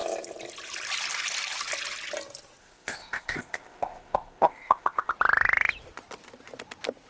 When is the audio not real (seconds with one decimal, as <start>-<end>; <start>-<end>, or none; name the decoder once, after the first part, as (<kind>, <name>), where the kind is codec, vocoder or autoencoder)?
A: 2.6-5.1 (codec, ZipCodec)